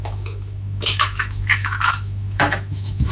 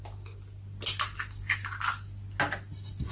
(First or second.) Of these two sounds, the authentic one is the second